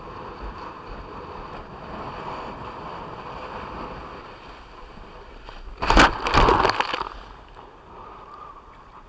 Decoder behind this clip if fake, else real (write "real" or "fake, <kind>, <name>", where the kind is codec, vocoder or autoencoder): real